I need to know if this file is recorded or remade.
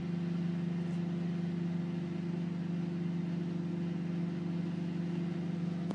recorded